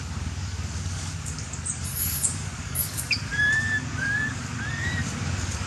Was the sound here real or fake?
fake